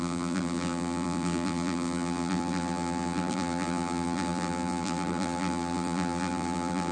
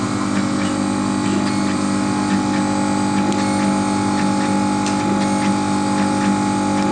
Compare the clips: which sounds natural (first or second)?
second